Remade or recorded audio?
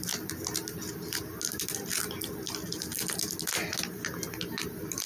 recorded